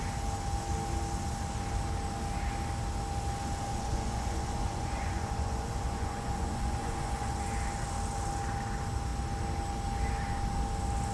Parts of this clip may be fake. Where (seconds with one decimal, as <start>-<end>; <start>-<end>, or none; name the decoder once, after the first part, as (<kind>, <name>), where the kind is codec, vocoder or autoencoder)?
3.7-7.4 (vocoder, Vocos)